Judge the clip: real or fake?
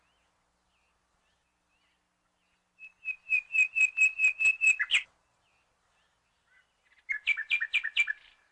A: real